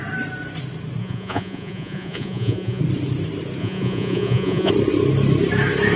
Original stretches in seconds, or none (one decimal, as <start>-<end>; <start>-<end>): 0.0-1.0; 2.8-3.6; 4.7-6.0